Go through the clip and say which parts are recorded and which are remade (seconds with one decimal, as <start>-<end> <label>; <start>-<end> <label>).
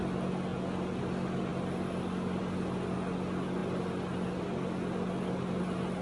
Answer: 0.0-6.0 recorded